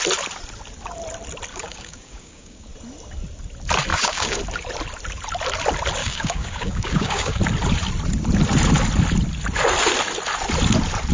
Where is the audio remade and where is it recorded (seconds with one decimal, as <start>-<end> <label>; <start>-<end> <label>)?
0.0-1.5 recorded; 1.5-2.7 remade; 2.7-3.9 recorded; 3.9-4.4 remade; 4.4-6.0 recorded; 6.0-7.4 remade; 7.4-11.1 recorded